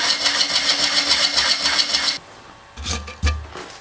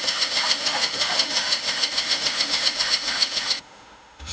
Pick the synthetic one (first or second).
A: second